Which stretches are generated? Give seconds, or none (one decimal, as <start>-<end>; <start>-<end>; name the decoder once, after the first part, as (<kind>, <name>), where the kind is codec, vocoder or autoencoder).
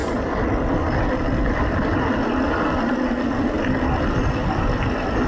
none